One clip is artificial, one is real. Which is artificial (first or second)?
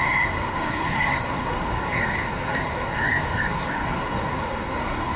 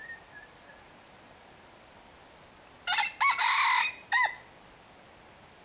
first